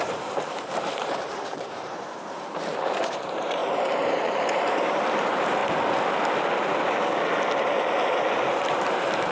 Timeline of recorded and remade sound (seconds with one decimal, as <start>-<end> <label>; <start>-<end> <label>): 0.0-5.6 remade; 5.6-8.6 recorded; 8.6-9.3 remade

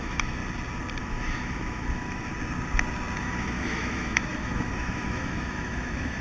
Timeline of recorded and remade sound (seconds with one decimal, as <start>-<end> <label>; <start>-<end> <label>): 0.0-0.4 remade; 0.4-1.0 recorded; 1.0-2.3 remade; 2.3-3.2 recorded; 3.2-6.2 remade

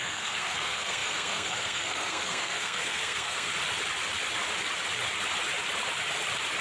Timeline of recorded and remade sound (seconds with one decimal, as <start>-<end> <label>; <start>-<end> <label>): 0.0-3.5 remade; 3.5-6.6 recorded

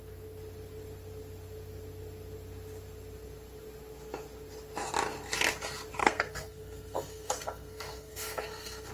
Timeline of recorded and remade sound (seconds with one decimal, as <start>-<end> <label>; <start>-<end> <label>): 0.0-6.0 recorded; 6.0-8.9 remade

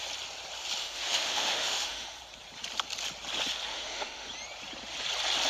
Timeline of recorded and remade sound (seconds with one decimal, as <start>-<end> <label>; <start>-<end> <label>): 0.0-0.8 recorded; 0.8-2.2 remade; 2.2-3.7 recorded; 3.7-4.3 remade; 4.3-5.5 recorded